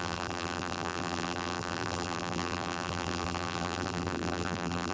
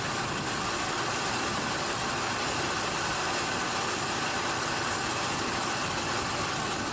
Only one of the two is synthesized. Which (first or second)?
first